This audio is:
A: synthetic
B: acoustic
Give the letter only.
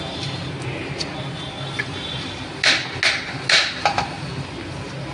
B